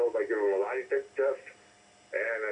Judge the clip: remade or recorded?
recorded